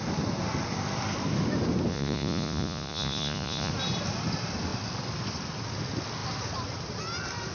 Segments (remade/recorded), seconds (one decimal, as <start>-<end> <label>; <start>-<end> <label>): 0.0-1.9 recorded; 1.9-3.7 remade; 3.7-7.5 recorded